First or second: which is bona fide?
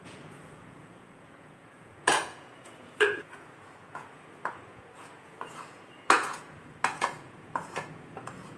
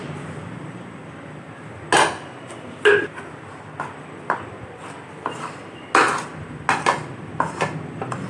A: second